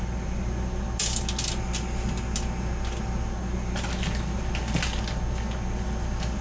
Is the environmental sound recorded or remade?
recorded